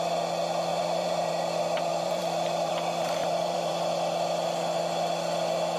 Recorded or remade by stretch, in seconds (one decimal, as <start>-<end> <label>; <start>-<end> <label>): 0.0-0.7 recorded; 0.7-1.3 remade; 1.3-1.9 recorded; 1.9-2.7 remade; 2.7-3.2 recorded; 3.2-3.7 remade; 3.7-5.8 recorded